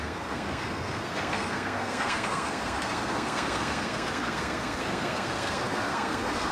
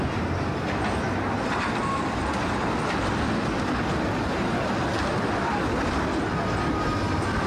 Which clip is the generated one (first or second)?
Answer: first